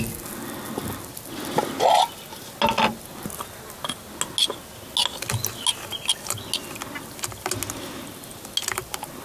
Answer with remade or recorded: recorded